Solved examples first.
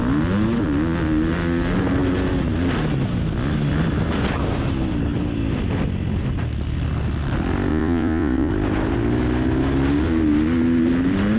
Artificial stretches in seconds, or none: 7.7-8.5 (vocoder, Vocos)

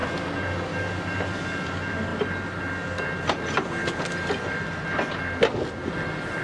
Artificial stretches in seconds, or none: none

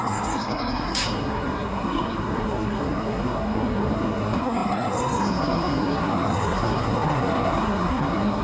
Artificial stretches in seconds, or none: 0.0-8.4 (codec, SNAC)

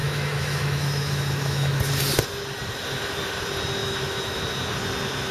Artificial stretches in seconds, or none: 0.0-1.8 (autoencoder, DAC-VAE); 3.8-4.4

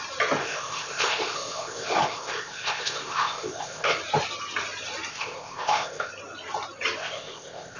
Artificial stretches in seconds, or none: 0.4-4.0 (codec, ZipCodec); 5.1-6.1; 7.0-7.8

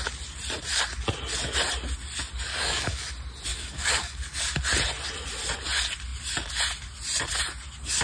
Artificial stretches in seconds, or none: 2.5-3.1 (codec, DAC); 3.5-4.6